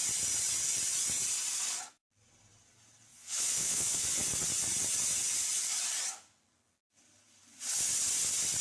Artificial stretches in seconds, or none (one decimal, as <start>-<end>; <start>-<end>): 3.1-4.3